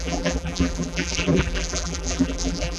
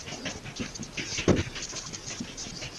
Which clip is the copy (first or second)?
first